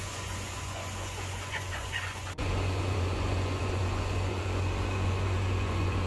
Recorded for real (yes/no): no